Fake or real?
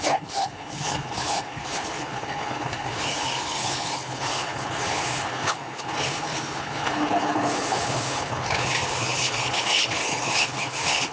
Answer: fake